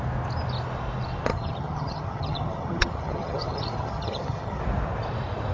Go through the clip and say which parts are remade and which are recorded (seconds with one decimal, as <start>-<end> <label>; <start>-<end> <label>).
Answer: 0.0-1.3 recorded; 1.3-4.6 remade; 4.6-5.5 recorded